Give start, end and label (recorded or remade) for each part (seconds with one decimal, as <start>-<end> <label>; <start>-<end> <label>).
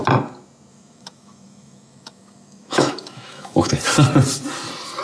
0.0-0.7 recorded; 0.7-3.7 remade; 3.7-5.0 recorded